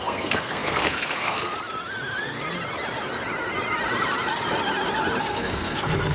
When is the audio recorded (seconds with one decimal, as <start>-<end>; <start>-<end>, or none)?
1.5-5.2